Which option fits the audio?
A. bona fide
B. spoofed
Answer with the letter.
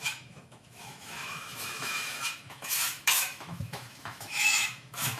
B